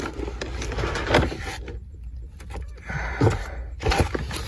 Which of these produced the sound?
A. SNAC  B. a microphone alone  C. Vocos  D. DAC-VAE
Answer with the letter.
B